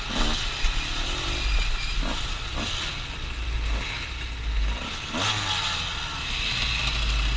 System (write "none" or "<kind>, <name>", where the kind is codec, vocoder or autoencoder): none